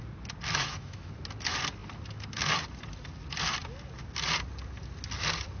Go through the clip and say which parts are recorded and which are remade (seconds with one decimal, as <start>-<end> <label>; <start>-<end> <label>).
0.0-0.6 recorded; 0.6-1.1 remade; 1.1-5.6 recorded